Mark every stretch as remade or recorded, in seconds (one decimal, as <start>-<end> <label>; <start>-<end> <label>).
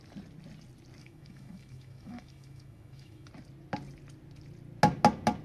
0.0-1.0 recorded; 1.0-3.3 remade; 3.3-5.4 recorded